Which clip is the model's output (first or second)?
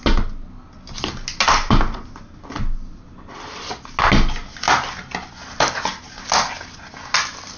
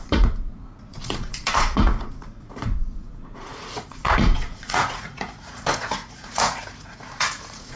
second